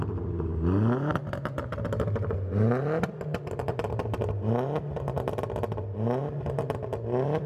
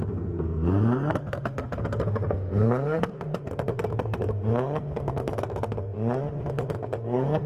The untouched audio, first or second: first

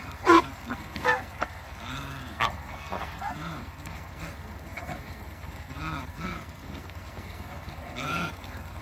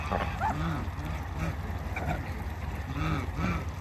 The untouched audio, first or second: second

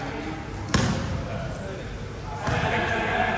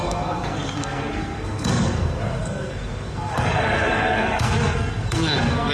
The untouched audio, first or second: first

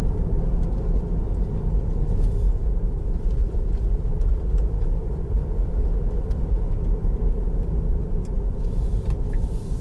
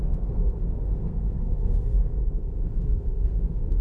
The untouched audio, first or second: first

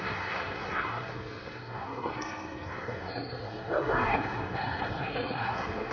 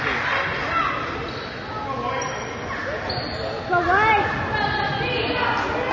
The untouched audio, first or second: second